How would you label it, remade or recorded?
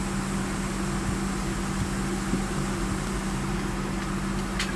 recorded